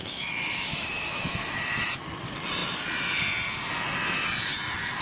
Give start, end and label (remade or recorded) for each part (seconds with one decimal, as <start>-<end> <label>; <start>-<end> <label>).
0.0-2.0 remade; 2.0-5.0 recorded